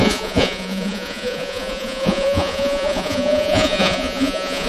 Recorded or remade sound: remade